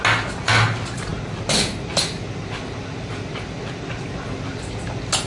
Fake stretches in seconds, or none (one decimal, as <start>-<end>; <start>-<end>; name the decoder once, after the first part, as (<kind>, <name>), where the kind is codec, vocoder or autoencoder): none